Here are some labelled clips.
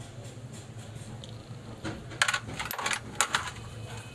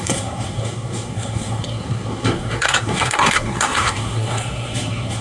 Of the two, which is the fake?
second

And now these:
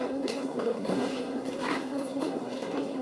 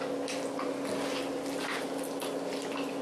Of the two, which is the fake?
first